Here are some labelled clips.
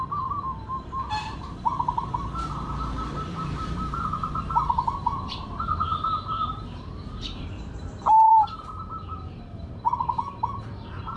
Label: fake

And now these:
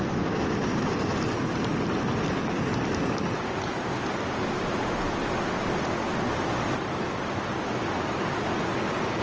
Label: real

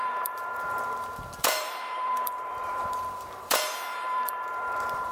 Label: fake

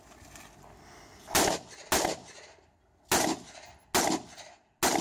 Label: real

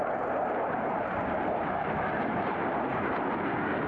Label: real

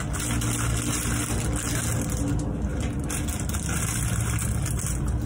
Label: real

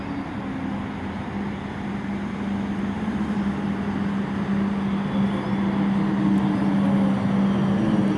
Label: real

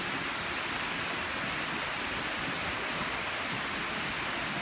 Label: real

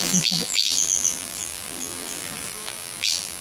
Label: fake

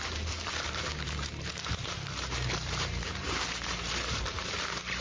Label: fake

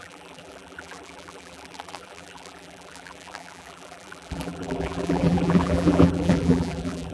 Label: fake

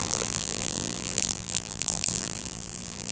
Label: fake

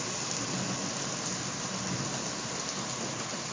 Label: real